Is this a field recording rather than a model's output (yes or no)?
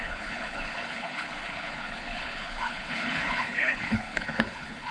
no